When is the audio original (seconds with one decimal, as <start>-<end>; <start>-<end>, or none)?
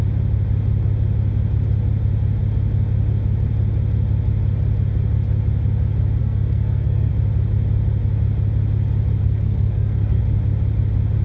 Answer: 0.0-6.2; 7.1-9.2; 10.2-11.2